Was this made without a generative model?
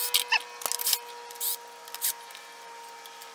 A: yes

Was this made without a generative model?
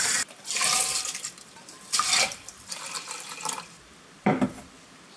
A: no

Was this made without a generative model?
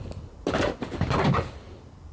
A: yes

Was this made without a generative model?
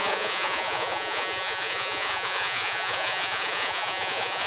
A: no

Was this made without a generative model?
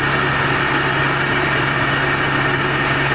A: yes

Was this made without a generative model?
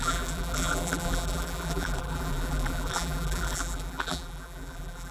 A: no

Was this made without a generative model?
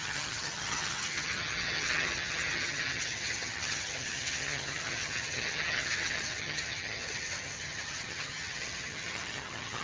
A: no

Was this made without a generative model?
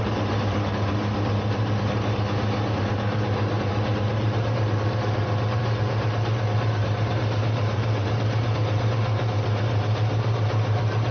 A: no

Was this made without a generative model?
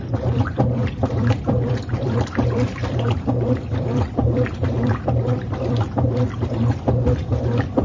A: no